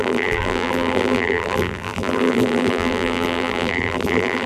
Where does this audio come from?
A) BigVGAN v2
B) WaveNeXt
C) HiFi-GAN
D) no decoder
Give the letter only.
A